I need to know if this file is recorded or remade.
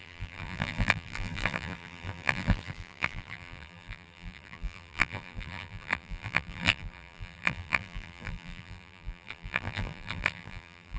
remade